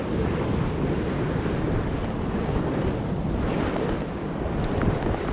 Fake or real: real